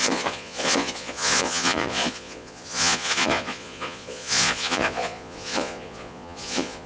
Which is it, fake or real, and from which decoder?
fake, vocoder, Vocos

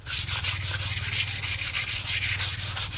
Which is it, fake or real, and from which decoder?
real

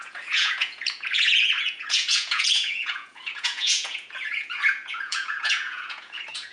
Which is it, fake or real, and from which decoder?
fake, vocoder, Vocos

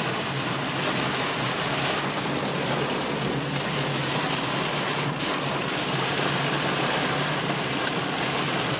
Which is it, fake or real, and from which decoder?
real